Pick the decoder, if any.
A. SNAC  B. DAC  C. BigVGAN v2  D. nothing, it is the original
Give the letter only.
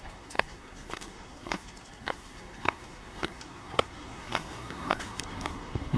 A